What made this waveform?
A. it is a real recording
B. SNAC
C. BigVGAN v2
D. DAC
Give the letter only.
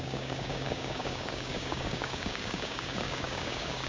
D